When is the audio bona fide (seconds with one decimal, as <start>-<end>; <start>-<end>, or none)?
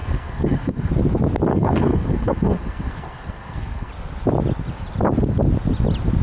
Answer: 0.9-1.5; 3.9-6.2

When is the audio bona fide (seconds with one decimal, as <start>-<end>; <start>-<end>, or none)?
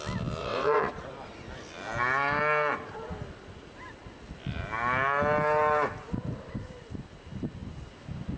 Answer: 0.0-0.4; 0.9-8.4